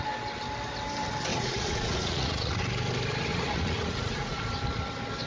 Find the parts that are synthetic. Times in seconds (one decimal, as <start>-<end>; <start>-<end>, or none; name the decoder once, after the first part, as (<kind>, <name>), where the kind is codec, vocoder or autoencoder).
1.3-2.6 (vocoder, Vocos); 3.3-4.4